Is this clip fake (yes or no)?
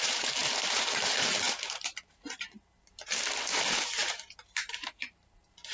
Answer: yes